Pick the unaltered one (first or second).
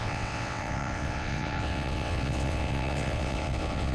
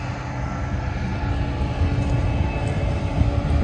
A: second